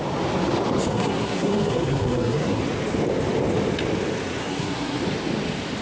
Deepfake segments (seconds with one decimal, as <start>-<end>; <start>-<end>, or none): 0.9-2.6; 4.4-5.0